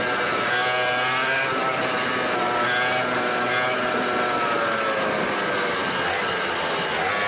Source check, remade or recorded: recorded